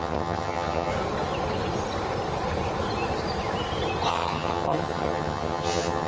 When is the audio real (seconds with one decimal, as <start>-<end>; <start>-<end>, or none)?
0.9-4.1